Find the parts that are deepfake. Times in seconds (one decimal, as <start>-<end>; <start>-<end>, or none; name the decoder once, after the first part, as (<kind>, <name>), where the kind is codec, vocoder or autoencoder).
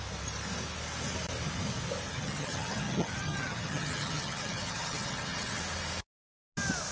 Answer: 2.1-5.6 (vocoder, HiFi-GAN)